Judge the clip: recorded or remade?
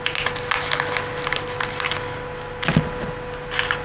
recorded